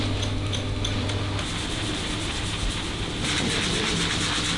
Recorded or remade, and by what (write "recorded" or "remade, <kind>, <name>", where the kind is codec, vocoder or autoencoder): recorded